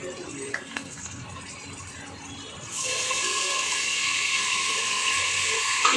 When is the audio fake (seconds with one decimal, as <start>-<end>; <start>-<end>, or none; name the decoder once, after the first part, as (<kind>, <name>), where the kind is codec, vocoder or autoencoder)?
0.5-1.2 (codec, SNAC); 2.7-6.0

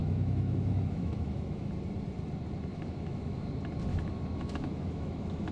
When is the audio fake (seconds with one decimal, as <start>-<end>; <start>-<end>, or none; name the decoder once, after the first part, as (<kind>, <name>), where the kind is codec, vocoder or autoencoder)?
0.0-1.7 (autoencoder, DAC-VAE); 2.7-3.5; 3.9-5.5

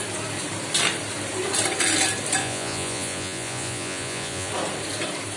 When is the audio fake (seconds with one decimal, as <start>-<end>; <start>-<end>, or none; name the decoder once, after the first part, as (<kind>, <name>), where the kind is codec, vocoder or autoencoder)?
2.4-4.5 (vocoder, Vocos)

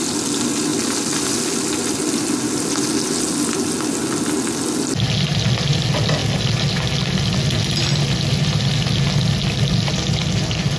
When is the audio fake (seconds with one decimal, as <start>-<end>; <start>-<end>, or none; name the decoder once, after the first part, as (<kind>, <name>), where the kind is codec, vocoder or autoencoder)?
none

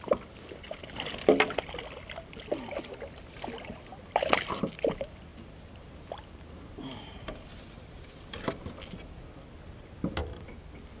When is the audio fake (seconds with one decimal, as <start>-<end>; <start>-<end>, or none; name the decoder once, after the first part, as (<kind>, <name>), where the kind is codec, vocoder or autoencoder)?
3.9-4.7 (vocoder, BigVGAN v2); 5.3-8.9; 10.2-11.0

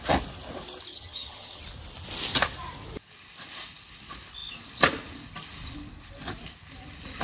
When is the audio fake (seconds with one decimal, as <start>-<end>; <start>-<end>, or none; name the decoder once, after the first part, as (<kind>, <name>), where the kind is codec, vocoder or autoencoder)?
0.9-1.6 (vocoder, HiFi-GAN)

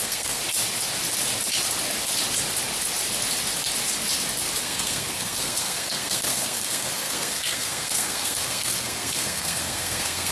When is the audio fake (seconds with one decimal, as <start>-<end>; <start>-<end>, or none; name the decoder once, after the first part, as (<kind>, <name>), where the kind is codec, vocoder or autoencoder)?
0.0-0.4 (codec, SNAC); 4.6-10.3